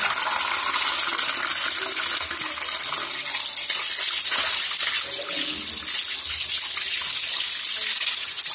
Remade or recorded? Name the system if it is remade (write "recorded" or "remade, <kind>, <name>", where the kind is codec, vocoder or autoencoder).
recorded